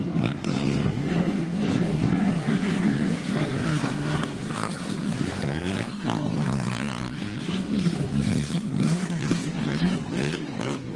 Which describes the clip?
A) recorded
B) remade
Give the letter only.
B